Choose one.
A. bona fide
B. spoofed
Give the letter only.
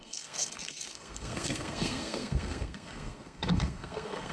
B